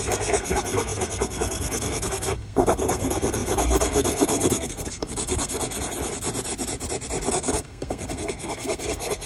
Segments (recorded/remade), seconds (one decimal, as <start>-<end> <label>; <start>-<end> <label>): 0.0-5.6 remade; 5.6-7.3 recorded; 7.3-9.3 remade